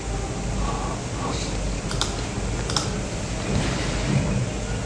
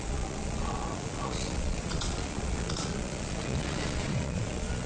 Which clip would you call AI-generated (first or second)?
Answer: second